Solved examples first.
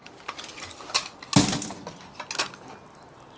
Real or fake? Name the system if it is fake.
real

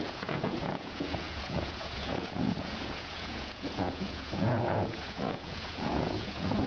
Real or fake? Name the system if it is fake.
fake, vocoder, Vocos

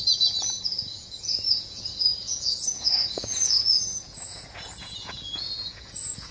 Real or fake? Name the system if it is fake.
fake, vocoder, Vocos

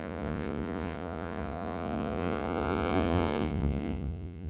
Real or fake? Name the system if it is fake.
fake, vocoder, Vocos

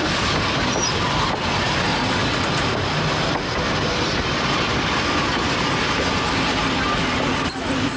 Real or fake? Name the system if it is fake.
real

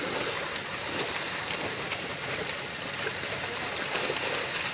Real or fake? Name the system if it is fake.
real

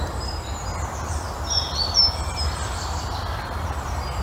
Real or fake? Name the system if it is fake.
real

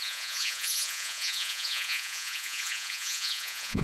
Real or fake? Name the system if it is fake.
fake, vocoder, Vocos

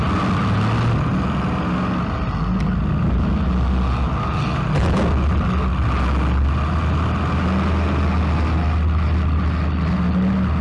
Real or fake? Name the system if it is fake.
real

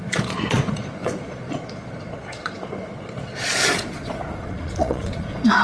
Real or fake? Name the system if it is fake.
fake, vocoder, Vocos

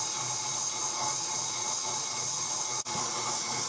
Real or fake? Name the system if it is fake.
fake, vocoder, Vocos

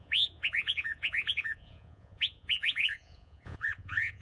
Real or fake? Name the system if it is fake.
fake, vocoder, Vocos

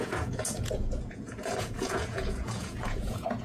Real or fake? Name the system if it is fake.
fake, vocoder, Vocos